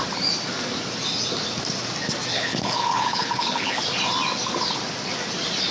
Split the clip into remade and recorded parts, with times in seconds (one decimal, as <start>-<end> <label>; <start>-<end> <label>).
0.0-2.3 recorded; 2.3-3.8 remade; 3.8-5.7 recorded